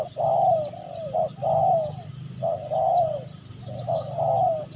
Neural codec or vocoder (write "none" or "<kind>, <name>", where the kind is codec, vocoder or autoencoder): none